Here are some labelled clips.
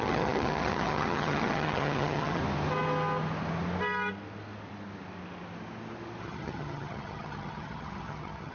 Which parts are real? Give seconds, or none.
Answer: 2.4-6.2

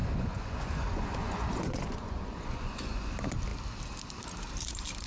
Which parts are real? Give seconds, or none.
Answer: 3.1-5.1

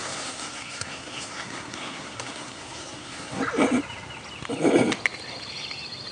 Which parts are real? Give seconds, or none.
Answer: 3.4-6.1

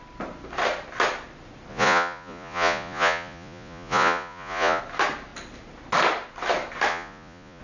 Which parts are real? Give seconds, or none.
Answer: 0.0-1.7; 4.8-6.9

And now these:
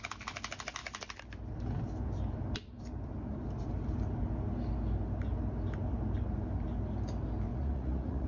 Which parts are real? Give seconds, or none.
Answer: 0.0-7.5